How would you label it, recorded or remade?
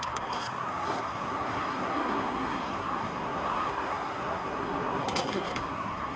remade